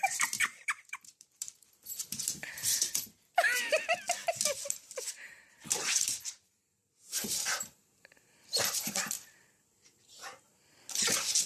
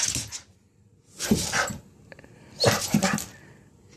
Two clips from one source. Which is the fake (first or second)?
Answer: first